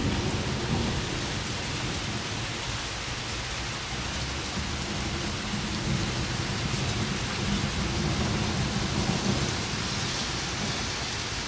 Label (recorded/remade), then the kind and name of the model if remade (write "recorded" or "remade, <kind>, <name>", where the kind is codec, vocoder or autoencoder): recorded